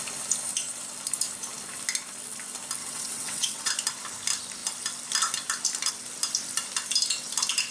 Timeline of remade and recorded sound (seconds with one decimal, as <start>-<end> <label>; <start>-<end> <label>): 0.0-2.8 recorded; 2.8-3.7 remade; 3.7-7.7 recorded